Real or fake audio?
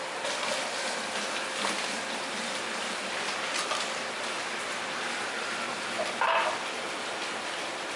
real